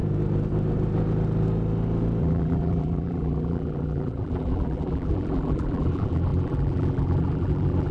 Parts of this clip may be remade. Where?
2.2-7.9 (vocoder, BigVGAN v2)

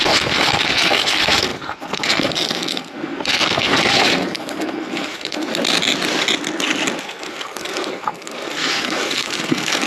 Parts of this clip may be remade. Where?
0.0-5.5 (codec, SNAC); 7.0-9.9

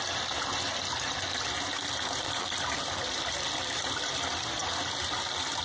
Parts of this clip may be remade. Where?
none